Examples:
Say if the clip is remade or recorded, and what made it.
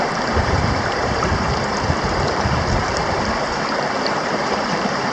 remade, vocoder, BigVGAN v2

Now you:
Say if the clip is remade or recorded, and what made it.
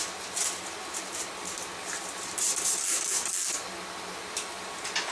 recorded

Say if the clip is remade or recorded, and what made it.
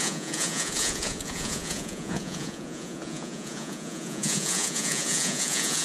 remade, vocoder, Vocos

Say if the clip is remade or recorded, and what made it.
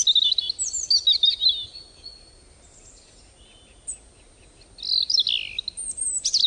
recorded